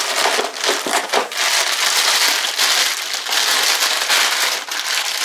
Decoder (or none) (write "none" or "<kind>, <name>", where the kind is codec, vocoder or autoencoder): none